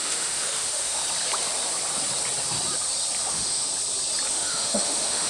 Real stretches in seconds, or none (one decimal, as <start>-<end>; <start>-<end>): 1.0-3.3; 3.7-4.3